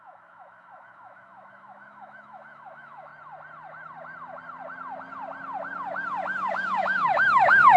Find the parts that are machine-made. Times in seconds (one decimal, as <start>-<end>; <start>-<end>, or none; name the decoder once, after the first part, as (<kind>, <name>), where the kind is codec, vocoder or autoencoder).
0.0-3.1 (autoencoder, DAC-VAE); 6.5-7.8